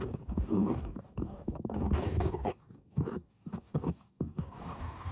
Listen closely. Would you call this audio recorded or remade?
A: remade